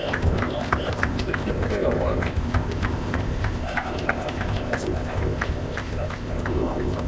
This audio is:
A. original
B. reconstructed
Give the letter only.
B